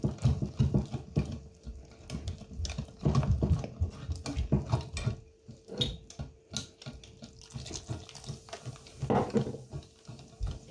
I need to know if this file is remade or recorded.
recorded